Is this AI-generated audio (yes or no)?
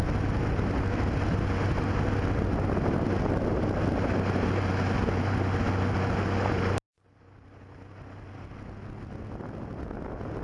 no